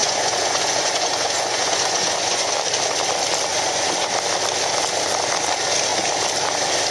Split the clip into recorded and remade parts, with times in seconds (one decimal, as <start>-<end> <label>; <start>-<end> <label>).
0.0-2.5 remade; 2.5-3.5 recorded; 3.5-4.1 remade; 4.1-6.9 recorded